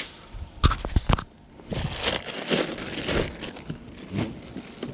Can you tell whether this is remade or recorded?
recorded